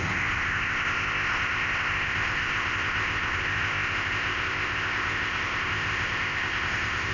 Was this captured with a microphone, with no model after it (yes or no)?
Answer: no